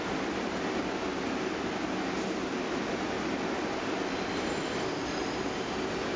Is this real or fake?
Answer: real